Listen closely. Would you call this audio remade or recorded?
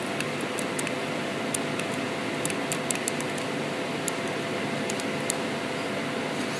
recorded